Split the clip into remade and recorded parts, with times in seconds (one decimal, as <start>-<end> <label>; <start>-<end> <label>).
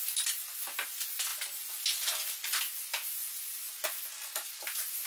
0.0-5.1 recorded